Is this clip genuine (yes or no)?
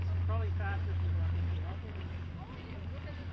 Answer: yes